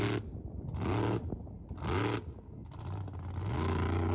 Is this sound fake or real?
real